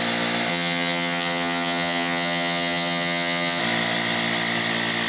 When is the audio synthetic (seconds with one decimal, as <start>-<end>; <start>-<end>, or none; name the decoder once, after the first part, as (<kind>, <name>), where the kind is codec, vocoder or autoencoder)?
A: 0.5-3.6 (vocoder, HiFi-GAN)